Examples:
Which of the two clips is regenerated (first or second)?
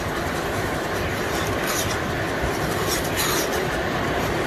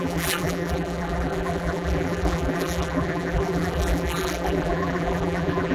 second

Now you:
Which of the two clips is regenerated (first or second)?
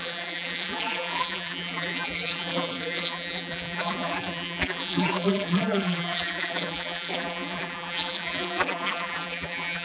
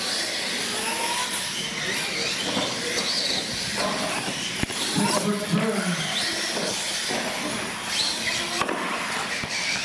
first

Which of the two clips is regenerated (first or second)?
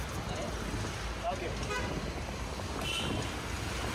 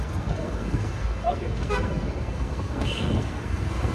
second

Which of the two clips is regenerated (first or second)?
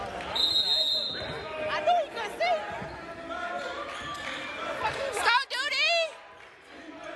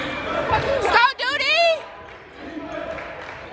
second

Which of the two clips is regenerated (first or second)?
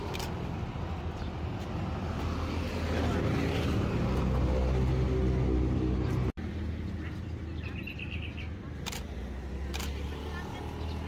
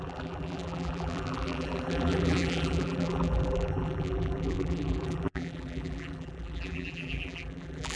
second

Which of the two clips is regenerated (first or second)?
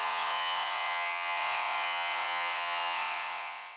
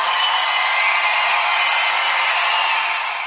first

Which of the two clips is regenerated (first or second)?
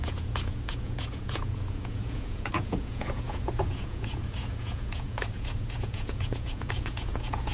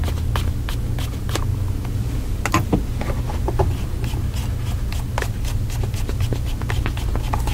first